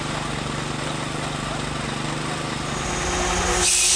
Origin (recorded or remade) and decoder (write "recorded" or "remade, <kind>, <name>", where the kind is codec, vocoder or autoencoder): recorded